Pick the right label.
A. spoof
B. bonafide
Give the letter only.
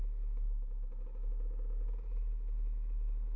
B